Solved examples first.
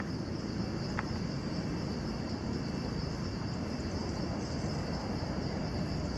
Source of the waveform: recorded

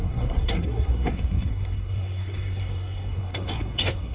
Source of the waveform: remade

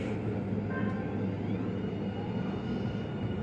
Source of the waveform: recorded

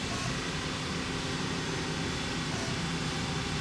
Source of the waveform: recorded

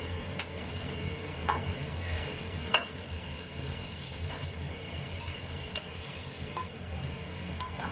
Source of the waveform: remade